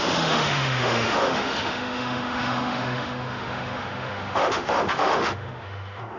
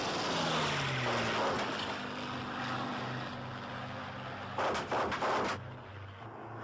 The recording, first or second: second